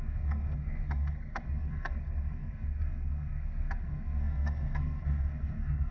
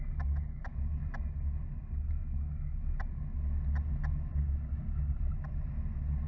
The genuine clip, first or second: second